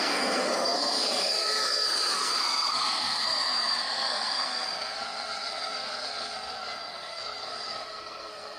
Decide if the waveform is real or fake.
fake